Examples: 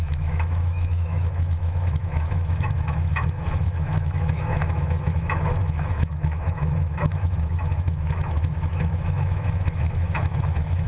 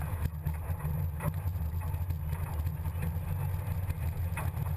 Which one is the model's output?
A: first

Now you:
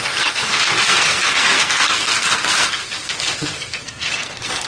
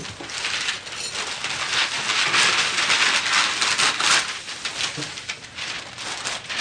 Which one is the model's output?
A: first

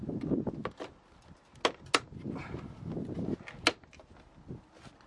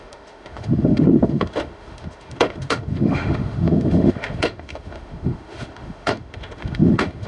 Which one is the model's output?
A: second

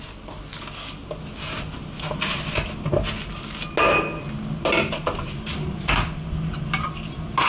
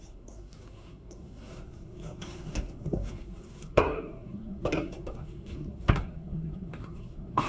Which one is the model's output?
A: second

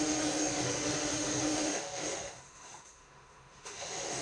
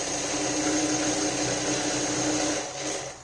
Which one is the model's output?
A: first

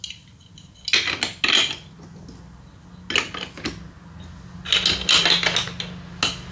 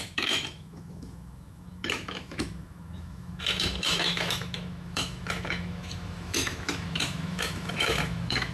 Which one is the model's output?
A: second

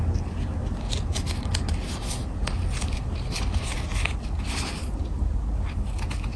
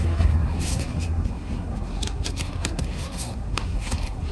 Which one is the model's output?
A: second